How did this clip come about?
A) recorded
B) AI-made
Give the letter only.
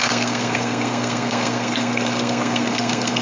B